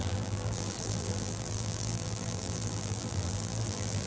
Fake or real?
fake